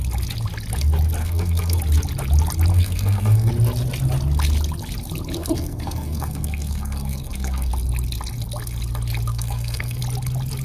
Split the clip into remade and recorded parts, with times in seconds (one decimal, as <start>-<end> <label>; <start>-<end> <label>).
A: 0.0-1.2 recorded; 1.2-1.8 remade; 1.8-2.7 recorded; 2.7-3.5 remade; 3.5-5.4 recorded; 5.4-7.7 remade; 7.7-9.3 recorded; 9.3-10.0 remade; 10.0-10.6 recorded